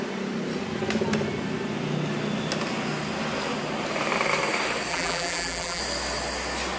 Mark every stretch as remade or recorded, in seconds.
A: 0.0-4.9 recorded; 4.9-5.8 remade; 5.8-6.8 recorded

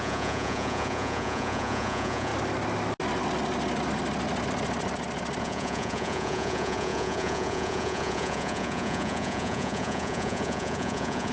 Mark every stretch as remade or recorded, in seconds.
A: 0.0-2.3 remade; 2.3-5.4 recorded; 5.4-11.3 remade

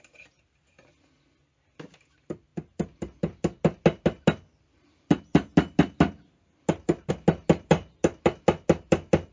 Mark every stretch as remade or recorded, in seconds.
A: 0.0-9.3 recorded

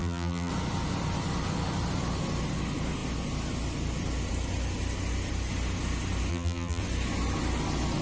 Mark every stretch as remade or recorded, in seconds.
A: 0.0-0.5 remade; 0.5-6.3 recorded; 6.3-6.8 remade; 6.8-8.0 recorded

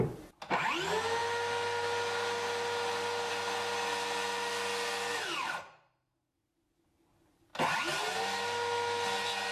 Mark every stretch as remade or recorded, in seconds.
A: 0.0-9.5 recorded